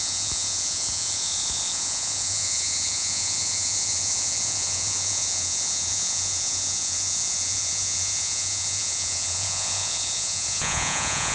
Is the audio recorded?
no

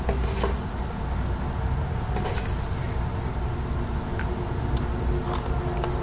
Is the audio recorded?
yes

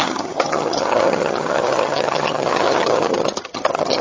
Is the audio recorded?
no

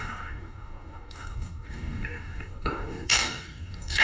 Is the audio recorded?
no